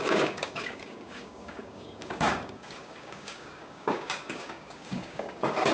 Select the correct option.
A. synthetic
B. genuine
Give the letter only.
A